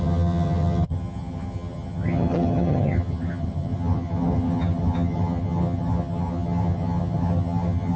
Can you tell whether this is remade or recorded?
remade